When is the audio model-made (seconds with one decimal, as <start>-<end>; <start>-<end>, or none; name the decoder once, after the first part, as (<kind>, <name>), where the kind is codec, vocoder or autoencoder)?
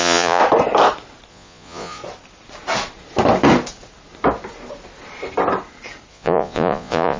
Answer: 0.0-0.4 (vocoder, Vocos); 1.3-2.0; 6.1-7.2